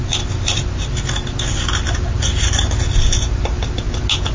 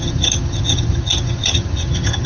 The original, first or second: first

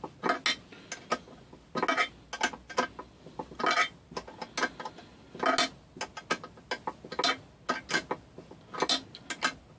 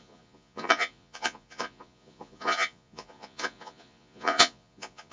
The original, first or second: first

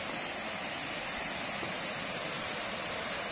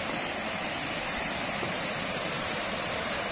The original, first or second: first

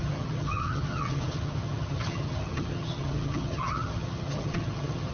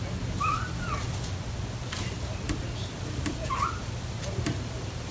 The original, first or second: second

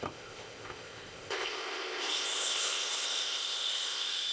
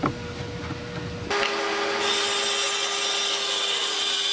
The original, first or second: second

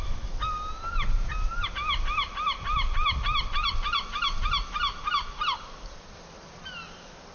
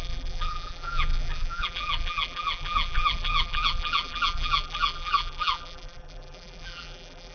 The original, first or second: first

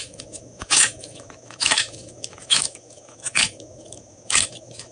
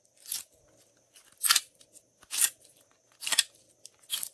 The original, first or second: second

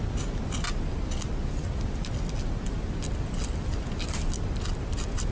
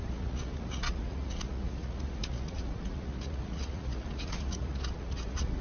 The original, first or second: first